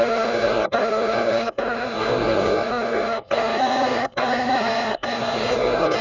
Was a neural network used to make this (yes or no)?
yes